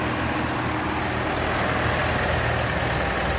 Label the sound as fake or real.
real